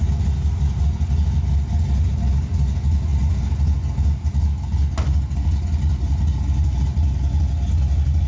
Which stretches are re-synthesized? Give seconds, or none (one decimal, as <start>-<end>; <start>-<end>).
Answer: none